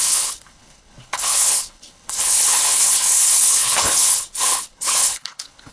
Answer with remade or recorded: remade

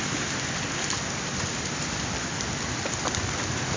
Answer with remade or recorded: recorded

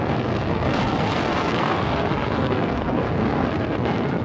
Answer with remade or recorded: remade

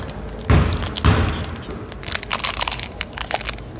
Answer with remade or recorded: recorded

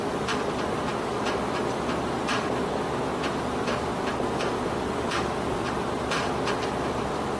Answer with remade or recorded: remade